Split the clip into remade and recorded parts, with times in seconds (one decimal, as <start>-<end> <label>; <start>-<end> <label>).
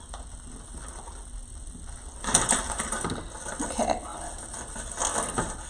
0.0-5.7 recorded